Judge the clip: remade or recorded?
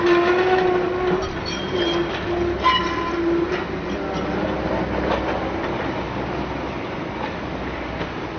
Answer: recorded